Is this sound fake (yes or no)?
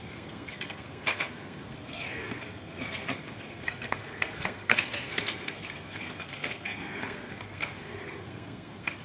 yes